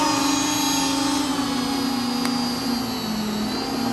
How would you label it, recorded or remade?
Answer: recorded